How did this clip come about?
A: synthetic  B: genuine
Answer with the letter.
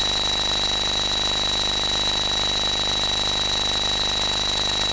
B